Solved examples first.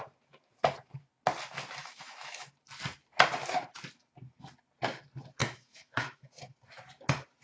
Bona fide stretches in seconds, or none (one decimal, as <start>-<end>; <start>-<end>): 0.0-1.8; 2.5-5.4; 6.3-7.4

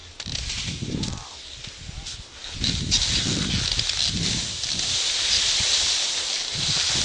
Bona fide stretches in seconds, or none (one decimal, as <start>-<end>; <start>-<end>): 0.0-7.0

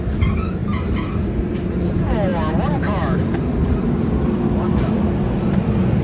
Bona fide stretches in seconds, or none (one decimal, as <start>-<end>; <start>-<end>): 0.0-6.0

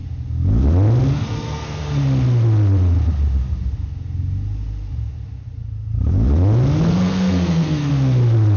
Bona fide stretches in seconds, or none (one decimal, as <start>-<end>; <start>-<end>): 0.0-1.1; 1.8-6.9; 7.9-8.6